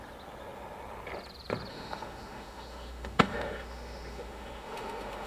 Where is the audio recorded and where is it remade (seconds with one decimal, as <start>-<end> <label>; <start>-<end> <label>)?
0.0-1.7 recorded; 1.7-5.3 remade